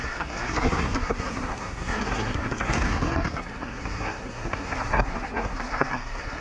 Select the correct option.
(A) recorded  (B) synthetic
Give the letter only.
B